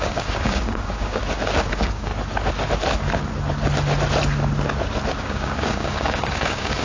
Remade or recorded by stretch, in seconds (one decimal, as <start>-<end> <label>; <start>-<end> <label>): 0.0-1.2 remade; 1.2-1.7 recorded; 1.7-2.1 remade; 2.1-5.2 recorded; 5.2-6.8 remade